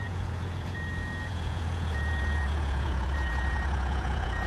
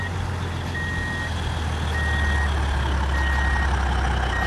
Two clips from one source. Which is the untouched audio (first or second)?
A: second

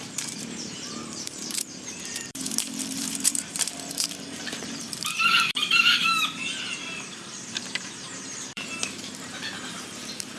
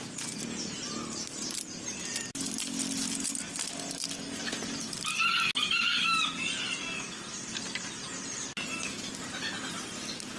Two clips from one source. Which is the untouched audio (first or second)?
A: second